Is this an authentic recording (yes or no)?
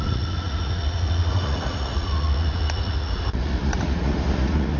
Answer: no